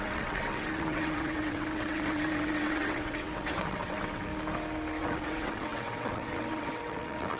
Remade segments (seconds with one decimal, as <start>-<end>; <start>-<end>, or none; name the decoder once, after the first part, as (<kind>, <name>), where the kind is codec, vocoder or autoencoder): 0.0-4.3 (vocoder, WaveNeXt); 5.0-7.4